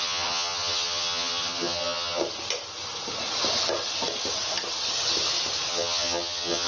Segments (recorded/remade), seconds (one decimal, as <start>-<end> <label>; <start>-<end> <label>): 0.0-2.2 remade; 2.2-5.7 recorded; 5.7-6.7 remade